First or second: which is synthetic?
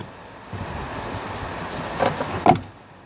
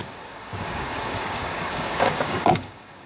second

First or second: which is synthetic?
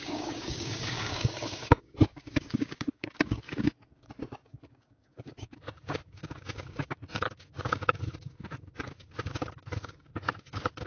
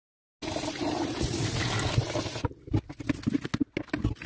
first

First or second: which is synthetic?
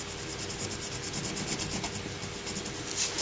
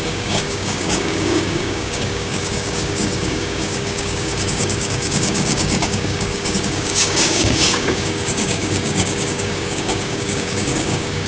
second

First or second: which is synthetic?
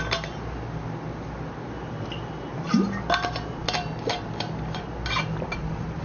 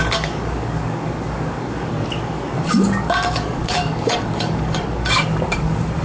second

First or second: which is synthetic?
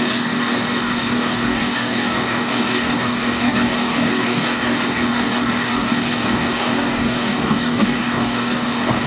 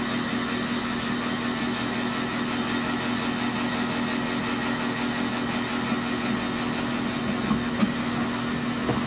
first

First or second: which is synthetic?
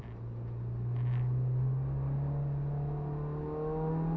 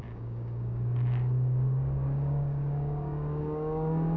second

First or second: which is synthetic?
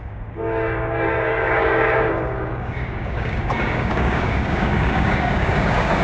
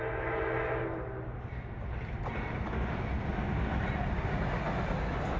first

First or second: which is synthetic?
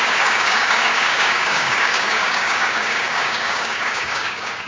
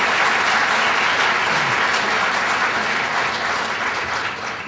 first